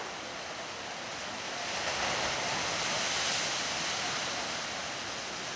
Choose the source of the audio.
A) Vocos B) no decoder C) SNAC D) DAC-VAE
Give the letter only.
B